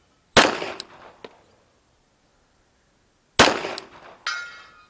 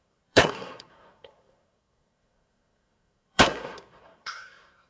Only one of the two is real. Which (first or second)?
first